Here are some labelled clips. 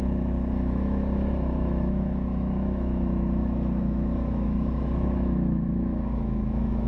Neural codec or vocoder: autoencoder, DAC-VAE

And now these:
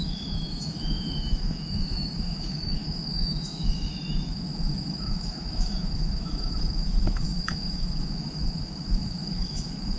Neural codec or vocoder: autoencoder, DAC-VAE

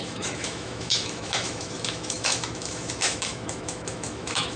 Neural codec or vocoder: autoencoder, DAC-VAE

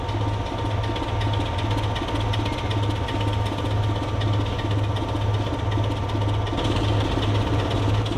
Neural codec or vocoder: none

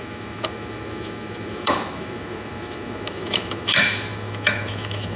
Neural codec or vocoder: autoencoder, DAC-VAE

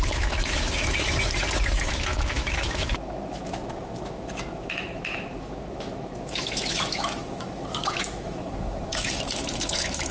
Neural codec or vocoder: autoencoder, DAC-VAE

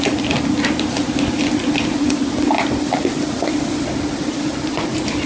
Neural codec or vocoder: none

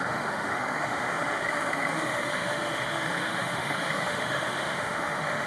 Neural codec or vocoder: autoencoder, DAC-VAE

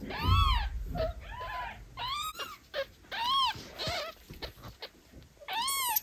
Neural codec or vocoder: none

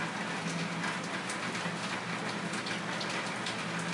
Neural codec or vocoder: none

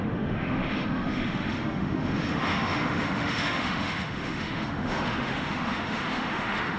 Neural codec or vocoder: autoencoder, DAC-VAE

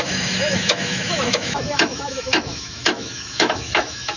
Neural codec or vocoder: autoencoder, DAC-VAE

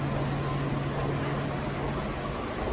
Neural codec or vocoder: none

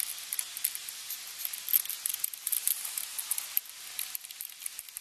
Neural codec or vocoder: none